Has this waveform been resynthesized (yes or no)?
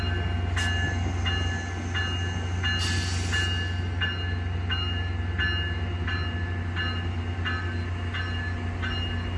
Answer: no